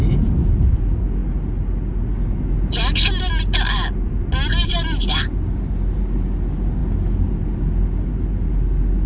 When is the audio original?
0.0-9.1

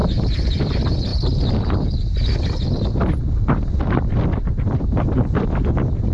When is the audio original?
0.6-6.1

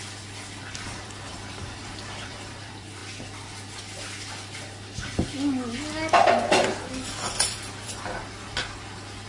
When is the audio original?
3.0-6.8; 8.2-9.3

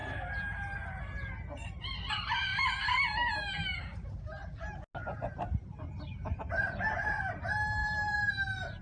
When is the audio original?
0.0-2.5; 3.0-5.0; 7.3-7.8; 8.3-8.8

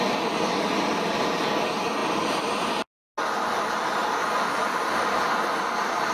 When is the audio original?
0.0-2.0; 2.7-4.0; 5.3-6.1